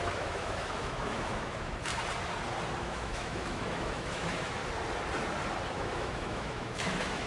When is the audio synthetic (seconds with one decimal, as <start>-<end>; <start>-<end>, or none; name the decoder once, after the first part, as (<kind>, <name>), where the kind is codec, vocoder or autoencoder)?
0.0-1.9 (autoencoder, DAC-VAE); 2.8-4.6; 5.7-7.3